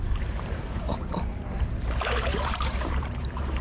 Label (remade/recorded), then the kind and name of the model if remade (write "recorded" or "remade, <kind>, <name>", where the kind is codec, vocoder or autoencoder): remade, vocoder, BigVGAN v2